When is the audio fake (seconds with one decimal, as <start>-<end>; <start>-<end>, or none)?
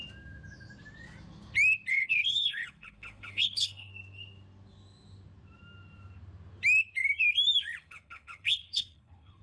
1.9-3.9; 7.8-9.4